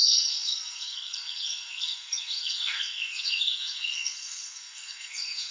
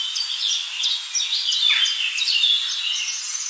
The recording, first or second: second